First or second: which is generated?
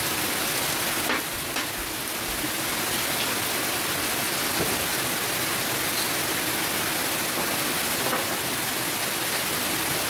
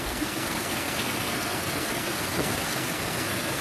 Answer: second